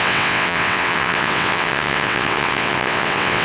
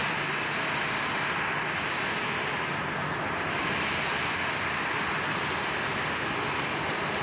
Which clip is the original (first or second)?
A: second